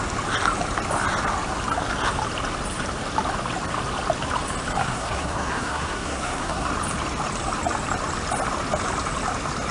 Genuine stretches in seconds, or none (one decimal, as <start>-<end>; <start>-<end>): 0.0-4.8; 6.7-9.7